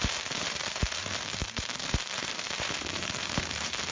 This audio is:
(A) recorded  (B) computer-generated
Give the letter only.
B